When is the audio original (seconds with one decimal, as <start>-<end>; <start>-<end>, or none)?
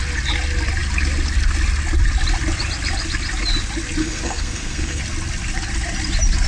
0.0-4.0; 5.0-6.5